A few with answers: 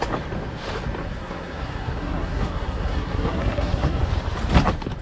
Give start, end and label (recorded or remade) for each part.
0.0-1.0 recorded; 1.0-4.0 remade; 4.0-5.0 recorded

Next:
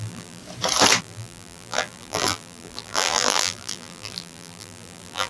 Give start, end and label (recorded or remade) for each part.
0.0-0.4 remade; 0.4-1.0 recorded; 1.0-5.3 remade

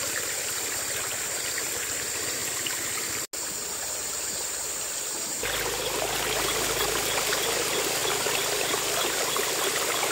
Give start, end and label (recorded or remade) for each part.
0.0-10.1 recorded

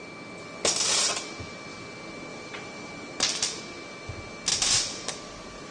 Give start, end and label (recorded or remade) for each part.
0.0-2.3 recorded; 2.3-3.6 remade; 3.6-4.5 recorded; 4.5-5.7 remade

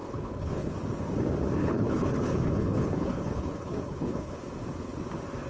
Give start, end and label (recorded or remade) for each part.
0.0-0.7 remade; 0.7-1.6 recorded; 1.6-4.4 remade; 4.4-5.5 recorded

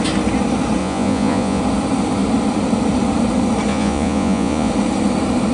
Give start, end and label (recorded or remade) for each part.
0.0-0.8 recorded; 0.8-1.6 remade; 1.6-3.7 recorded; 3.7-4.7 remade; 4.7-5.5 recorded

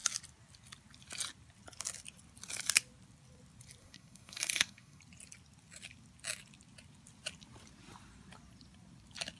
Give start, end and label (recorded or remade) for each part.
0.0-3.8 recorded; 3.8-5.0 remade; 5.0-9.4 recorded